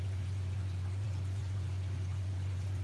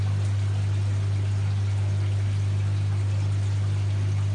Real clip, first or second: second